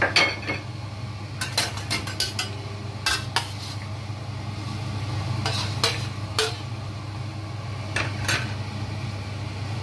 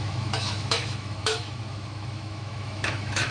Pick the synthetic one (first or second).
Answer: second